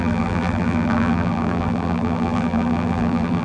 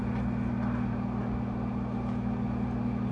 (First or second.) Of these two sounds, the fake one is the first